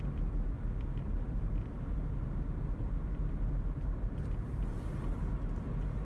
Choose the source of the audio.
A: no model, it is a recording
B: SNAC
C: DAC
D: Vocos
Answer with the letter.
A